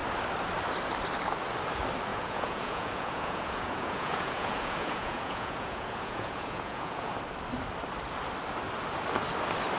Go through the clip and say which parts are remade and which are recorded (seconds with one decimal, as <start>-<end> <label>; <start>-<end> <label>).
0.0-2.1 recorded; 2.1-7.1 remade; 7.1-9.8 recorded